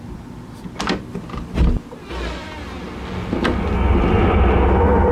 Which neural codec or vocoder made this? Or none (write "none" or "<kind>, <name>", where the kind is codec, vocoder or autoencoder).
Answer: none